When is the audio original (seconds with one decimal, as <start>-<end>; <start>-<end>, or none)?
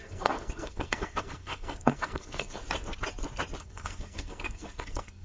2.6-3.6